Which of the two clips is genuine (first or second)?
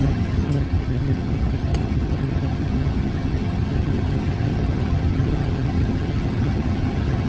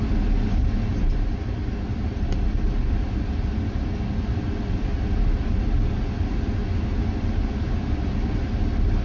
second